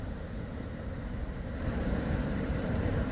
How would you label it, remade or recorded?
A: remade